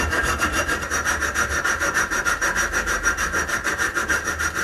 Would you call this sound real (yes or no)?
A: no